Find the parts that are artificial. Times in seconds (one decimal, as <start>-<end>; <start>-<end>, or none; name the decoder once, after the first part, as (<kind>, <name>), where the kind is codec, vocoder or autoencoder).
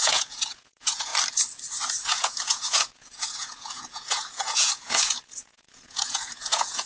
0.0-1.1 (vocoder, Vocos); 2.0-6.8